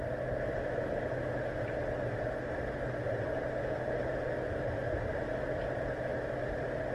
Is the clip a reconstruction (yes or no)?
no